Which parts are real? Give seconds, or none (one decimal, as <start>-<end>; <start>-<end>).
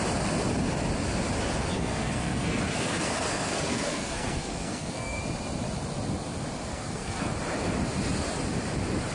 0.0-1.7; 5.2-6.7; 7.3-9.1